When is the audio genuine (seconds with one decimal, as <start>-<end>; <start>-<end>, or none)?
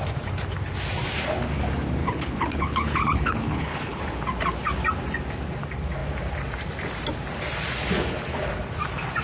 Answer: 0.0-2.0; 4.0-9.2